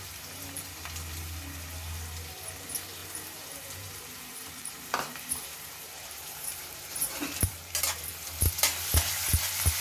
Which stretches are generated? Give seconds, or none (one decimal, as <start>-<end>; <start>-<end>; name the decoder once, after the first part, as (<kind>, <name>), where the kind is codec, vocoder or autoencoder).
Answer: 3.0-7.8 (vocoder, BigVGAN v2)